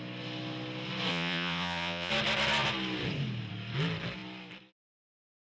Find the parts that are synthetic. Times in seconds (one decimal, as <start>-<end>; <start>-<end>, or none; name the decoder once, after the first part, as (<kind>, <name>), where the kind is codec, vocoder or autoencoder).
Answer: 1.1-2.1 (vocoder, Vocos)